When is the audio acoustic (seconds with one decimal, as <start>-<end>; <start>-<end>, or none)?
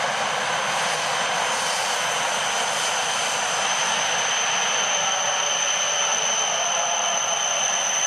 0.0-8.1